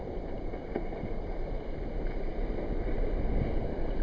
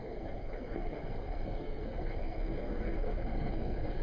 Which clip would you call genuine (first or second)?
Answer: first